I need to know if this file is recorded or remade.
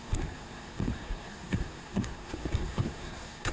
remade